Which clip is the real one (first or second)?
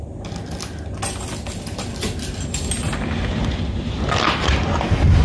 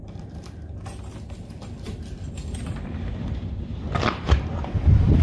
first